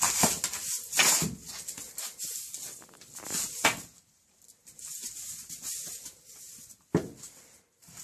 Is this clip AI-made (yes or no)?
no